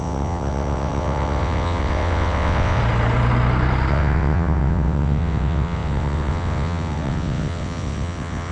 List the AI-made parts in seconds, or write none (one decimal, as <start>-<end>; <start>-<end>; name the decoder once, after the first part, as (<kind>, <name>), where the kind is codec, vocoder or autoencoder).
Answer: 0.0-2.8 (vocoder, WaveNeXt); 3.9-8.5